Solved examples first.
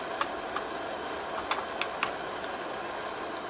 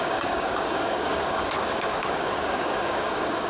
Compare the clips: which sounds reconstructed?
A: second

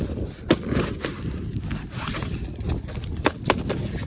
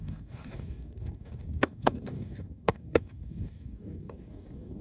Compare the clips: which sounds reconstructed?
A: second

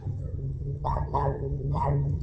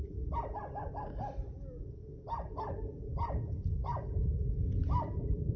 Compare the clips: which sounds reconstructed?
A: first